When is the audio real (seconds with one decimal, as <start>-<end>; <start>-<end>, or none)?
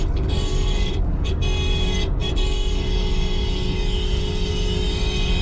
none